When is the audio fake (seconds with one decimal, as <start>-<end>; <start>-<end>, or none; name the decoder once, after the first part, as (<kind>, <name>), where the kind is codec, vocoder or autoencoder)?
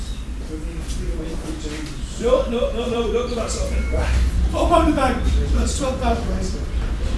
2.7-6.7 (vocoder, BigVGAN v2)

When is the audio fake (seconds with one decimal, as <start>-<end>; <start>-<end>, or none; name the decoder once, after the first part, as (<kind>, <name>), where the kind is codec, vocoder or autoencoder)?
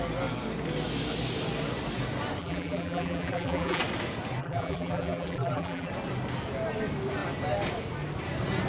2.4-3.8 (vocoder, BigVGAN v2); 4.4-5.9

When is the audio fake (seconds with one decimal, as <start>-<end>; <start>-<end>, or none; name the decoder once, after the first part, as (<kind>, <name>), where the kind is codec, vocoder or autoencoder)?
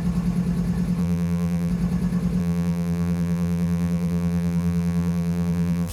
1.0-1.7 (vocoder, BigVGAN v2); 2.4-5.9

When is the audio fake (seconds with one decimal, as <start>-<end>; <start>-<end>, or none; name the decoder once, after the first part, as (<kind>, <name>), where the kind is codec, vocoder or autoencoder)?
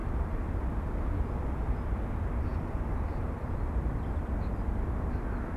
0.0-1.7 (vocoder, BigVGAN v2); 2.5-4.2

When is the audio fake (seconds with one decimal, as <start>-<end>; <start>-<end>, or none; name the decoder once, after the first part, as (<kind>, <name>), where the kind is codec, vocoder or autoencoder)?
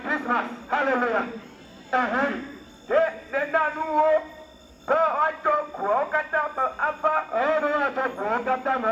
none